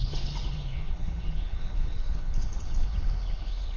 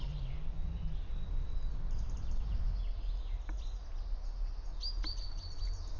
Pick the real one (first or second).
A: second